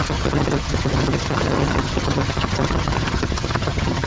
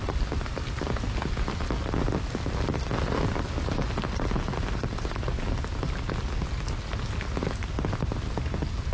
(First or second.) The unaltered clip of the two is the second